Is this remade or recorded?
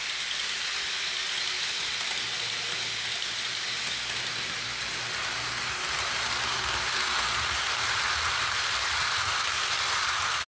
recorded